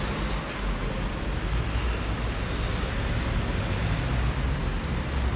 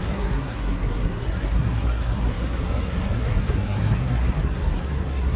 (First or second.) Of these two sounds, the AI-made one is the second